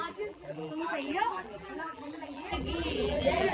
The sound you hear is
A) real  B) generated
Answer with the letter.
B